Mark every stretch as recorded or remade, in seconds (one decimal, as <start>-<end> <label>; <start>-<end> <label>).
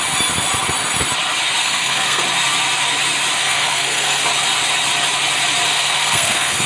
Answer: 0.0-1.6 recorded; 1.6-2.2 remade; 2.2-3.4 recorded; 3.4-4.2 remade; 4.2-5.7 recorded; 5.7-6.7 remade